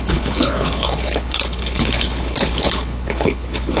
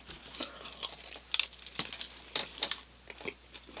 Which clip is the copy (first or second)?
first